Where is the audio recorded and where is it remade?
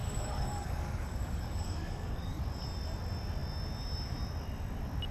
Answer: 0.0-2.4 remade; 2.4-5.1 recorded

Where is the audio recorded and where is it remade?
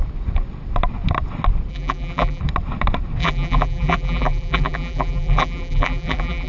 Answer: 0.0-1.7 recorded; 1.7-2.4 remade; 2.4-3.2 recorded; 3.2-6.5 remade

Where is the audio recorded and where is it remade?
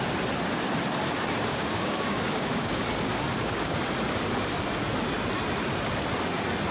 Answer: 0.0-1.5 recorded; 1.5-2.8 remade; 2.8-3.3 recorded; 3.3-3.8 remade; 3.8-6.7 recorded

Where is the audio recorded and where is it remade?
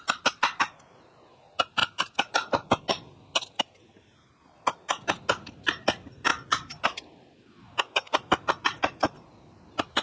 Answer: 0.0-10.0 recorded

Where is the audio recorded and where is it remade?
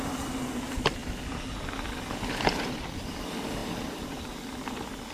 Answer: 0.0-5.1 recorded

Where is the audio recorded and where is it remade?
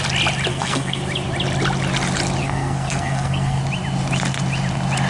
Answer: 0.0-0.5 recorded; 0.5-1.0 remade; 1.0-2.4 recorded; 2.4-3.6 remade; 3.6-5.1 recorded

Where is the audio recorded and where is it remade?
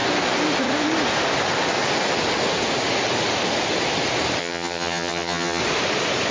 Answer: 0.0-4.4 recorded; 4.4-5.6 remade; 5.6-6.3 recorded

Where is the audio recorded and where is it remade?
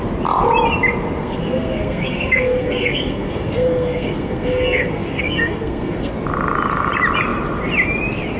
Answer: 0.0-1.2 recorded; 1.2-6.1 remade; 6.1-8.4 recorded